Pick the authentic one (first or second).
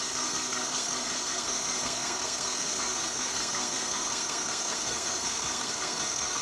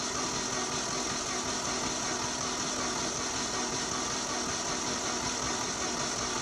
second